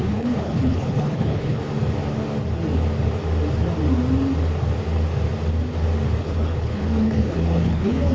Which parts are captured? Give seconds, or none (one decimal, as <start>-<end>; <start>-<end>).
1.6-6.2